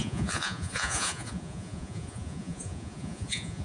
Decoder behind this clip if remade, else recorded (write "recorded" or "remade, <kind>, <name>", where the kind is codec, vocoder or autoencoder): remade, vocoder, Vocos